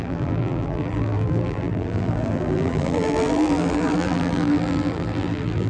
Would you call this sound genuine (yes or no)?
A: no